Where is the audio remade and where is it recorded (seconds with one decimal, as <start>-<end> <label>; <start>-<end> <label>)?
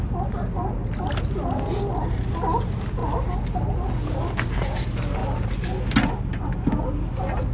0.0-7.5 recorded